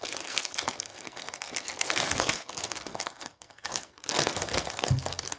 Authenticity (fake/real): fake